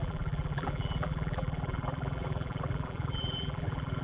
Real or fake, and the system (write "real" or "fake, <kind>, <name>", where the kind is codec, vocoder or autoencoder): fake, vocoder, BigVGAN v2